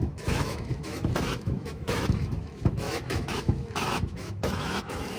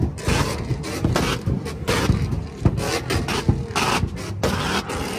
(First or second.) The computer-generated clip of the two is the first